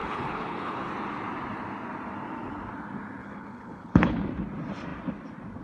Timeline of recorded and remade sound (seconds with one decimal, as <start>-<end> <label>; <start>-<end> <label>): 0.0-0.9 remade; 0.9-3.2 recorded; 3.2-4.2 remade; 4.2-5.6 recorded